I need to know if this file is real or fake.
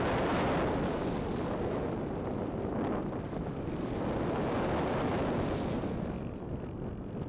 real